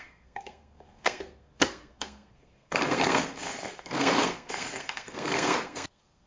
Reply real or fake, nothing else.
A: fake